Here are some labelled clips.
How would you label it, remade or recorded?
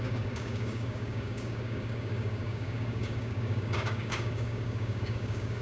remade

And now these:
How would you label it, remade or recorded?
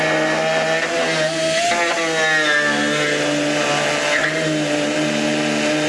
recorded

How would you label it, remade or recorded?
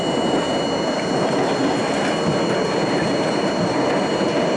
recorded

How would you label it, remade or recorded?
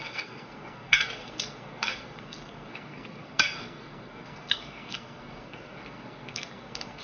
remade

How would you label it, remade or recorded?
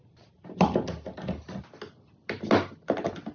recorded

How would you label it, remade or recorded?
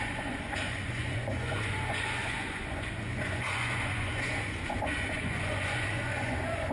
remade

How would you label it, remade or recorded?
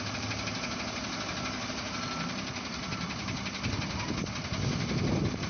recorded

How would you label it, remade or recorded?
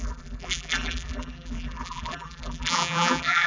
remade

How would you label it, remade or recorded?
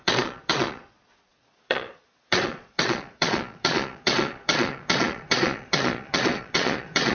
remade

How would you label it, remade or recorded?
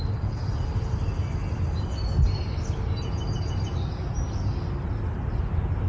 recorded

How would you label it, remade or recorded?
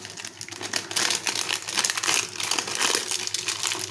recorded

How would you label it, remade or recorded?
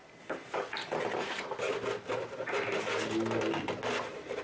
recorded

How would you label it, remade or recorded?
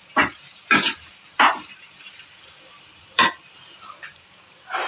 remade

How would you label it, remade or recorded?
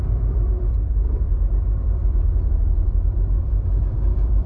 remade